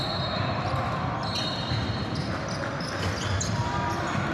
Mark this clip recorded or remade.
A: recorded